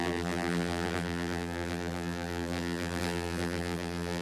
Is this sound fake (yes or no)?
yes